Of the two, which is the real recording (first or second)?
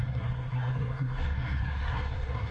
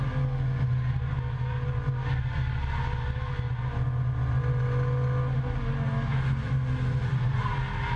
second